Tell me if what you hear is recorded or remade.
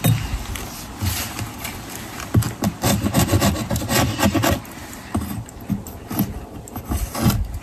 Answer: recorded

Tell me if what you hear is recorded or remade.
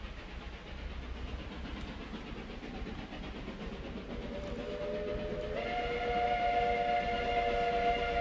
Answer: recorded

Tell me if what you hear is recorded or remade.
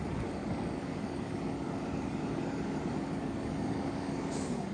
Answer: remade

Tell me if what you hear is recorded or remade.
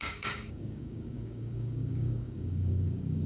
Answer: remade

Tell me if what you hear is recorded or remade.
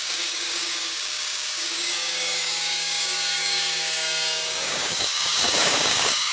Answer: remade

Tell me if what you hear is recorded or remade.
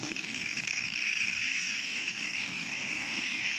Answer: remade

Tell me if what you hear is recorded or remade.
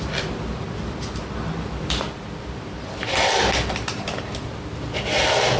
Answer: recorded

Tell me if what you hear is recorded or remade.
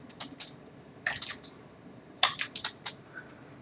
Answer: recorded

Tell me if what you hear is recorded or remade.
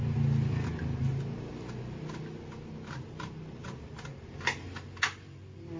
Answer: recorded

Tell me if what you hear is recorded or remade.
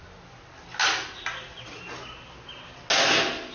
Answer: recorded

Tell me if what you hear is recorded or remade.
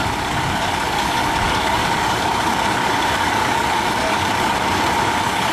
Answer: remade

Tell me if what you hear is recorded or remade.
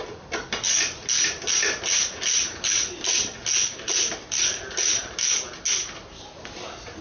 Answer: recorded